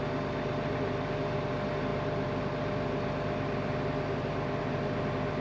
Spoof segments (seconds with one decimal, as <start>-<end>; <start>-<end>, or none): none

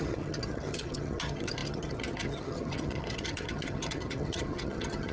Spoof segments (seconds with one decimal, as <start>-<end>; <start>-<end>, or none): 0.0-5.1